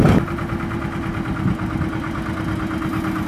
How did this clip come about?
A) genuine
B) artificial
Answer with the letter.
A